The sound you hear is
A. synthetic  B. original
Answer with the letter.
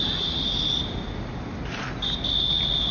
B